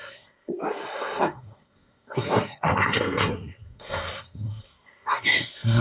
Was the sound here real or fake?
fake